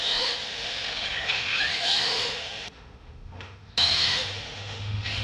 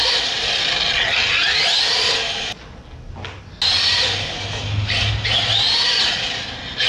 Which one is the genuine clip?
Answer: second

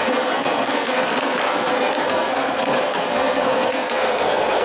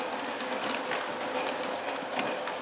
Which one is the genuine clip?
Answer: second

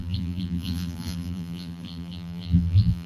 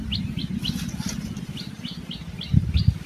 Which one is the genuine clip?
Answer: second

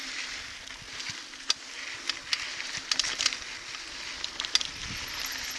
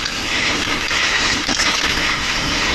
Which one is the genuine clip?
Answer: first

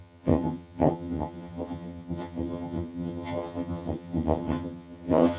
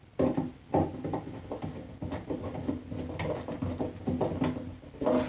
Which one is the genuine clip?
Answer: second